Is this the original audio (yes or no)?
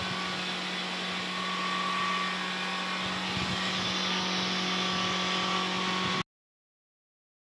yes